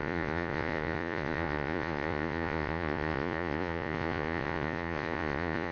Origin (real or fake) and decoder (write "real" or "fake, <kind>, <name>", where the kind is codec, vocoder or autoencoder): fake, vocoder, Vocos